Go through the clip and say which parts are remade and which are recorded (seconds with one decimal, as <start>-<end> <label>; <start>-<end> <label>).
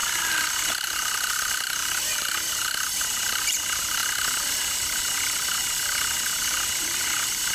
0.0-7.5 remade